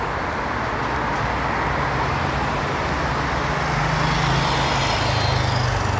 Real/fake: real